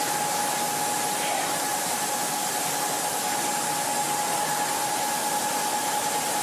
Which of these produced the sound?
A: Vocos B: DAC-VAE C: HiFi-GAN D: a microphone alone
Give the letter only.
D